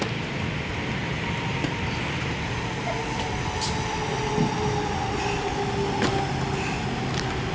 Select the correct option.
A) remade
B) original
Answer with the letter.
B